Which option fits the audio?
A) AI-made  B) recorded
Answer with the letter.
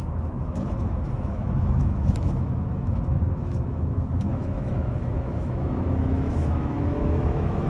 A